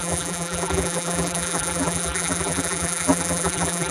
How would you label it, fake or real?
fake